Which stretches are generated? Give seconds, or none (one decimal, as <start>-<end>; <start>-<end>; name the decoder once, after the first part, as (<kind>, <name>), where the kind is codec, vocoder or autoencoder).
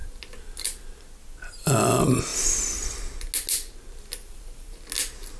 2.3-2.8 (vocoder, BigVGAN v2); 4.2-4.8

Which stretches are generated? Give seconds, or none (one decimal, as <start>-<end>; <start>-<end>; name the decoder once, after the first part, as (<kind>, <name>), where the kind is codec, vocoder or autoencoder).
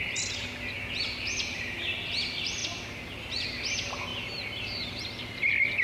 none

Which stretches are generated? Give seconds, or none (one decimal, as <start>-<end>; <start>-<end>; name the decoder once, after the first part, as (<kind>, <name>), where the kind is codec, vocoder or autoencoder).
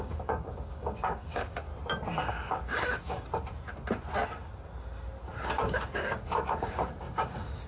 0.0-1.7 (codec, DAC); 2.3-3.3; 5.4-7.7